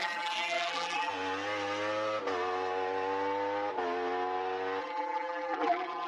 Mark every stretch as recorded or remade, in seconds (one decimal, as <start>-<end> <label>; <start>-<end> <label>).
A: 0.0-1.1 remade; 1.1-4.8 recorded; 4.8-6.1 remade